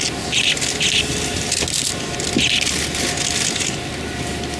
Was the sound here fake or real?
real